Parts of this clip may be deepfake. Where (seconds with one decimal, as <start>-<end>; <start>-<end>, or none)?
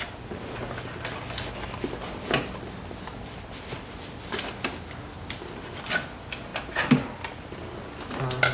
none